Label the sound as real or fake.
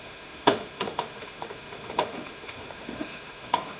fake